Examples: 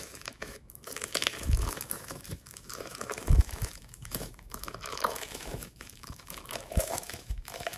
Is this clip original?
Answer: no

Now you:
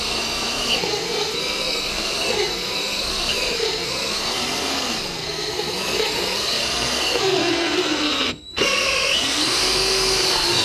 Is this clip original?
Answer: no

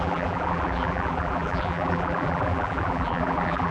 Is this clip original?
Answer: no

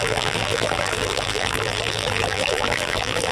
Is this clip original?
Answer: no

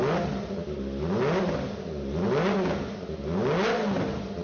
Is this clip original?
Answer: yes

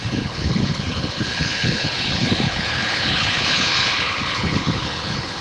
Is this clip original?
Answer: no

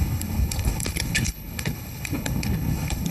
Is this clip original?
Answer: no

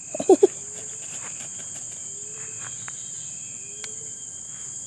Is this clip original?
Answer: yes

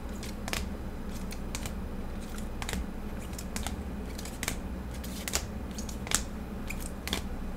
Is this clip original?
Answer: yes